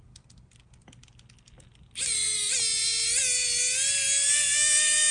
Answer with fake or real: real